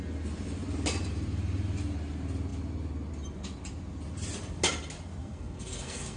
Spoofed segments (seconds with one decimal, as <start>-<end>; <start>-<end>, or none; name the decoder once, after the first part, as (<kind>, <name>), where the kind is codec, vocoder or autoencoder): 5.2-6.2 (codec, SNAC)